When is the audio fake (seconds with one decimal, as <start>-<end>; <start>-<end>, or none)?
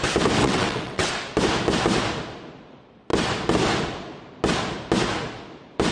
0.4-1.1